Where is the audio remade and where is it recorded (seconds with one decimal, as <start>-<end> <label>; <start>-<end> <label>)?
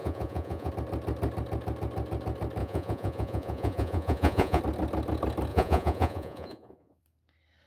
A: 0.0-0.7 remade; 0.7-2.6 recorded; 2.6-4.6 remade; 4.6-5.5 recorded; 5.5-7.0 remade; 7.0-7.7 recorded